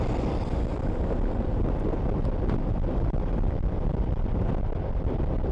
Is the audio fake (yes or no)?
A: no